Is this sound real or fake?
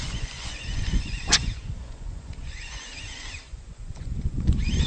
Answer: fake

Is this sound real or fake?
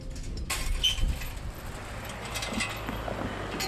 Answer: real